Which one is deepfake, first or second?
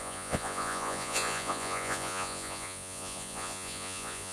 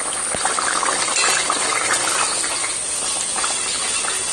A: first